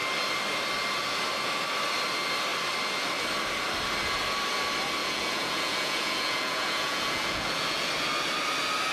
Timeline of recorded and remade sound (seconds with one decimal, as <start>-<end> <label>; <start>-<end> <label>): 0.0-5.0 recorded; 5.0-7.9 remade; 7.9-8.9 recorded